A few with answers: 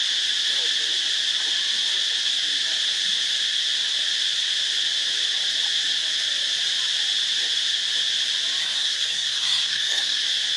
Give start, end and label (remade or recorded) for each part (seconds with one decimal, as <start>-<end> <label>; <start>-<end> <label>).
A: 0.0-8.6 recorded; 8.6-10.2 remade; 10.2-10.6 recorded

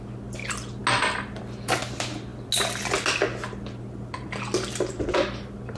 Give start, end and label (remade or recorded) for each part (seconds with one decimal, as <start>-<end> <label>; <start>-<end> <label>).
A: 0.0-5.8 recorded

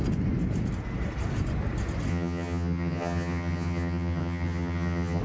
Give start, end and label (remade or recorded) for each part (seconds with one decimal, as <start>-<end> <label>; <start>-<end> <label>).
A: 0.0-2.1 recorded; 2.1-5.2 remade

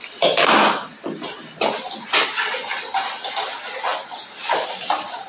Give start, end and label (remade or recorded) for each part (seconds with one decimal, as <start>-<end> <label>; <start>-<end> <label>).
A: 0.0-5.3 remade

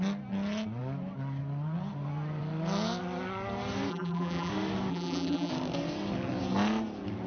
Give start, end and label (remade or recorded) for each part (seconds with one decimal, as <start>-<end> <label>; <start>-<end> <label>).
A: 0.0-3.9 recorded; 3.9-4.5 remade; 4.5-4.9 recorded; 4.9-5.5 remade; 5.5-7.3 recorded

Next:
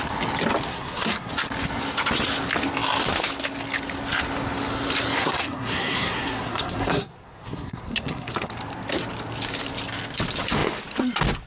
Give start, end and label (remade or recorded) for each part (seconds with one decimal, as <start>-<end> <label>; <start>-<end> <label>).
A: 0.0-0.7 recorded; 0.7-1.3 remade; 1.3-5.2 recorded; 5.2-8.5 remade; 8.5-11.5 recorded

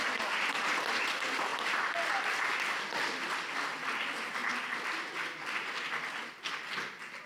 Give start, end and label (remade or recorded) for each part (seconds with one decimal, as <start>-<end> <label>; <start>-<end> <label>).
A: 0.0-7.3 recorded